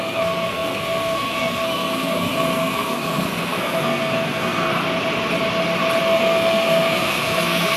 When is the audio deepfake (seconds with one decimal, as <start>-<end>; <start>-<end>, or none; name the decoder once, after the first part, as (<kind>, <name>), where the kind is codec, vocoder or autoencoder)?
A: 0.0-4.7 (codec, SNAC); 6.0-7.8